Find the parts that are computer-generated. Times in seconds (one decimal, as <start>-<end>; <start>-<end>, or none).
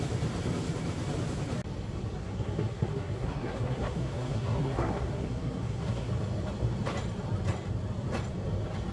2.2-6.1